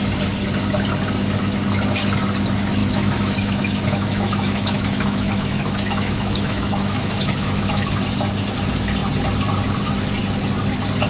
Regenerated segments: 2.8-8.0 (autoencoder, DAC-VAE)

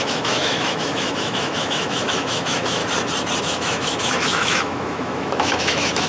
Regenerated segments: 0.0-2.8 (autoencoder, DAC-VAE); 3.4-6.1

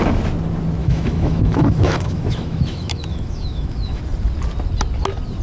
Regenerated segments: 0.8-4.0 (autoencoder, DAC-VAE)

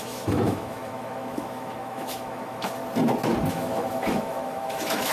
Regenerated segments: 0.0-2.8 (autoencoder, DAC-VAE); 3.5-5.1

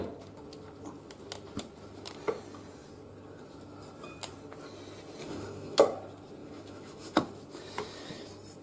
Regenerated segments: 5.2-5.8 (autoencoder, DAC-VAE); 6.4-7.2

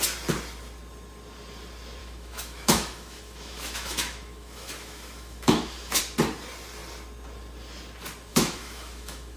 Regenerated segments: 2.0-6.0 (autoencoder, DAC-VAE); 8.3-9.4